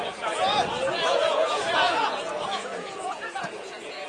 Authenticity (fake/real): fake